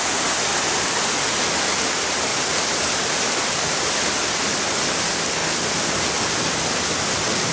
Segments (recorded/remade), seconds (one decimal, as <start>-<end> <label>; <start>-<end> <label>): 0.0-0.5 recorded; 0.5-1.0 remade; 1.0-2.3 recorded; 2.3-4.3 remade; 4.3-7.5 recorded